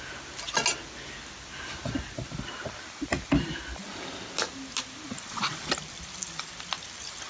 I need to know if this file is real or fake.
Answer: real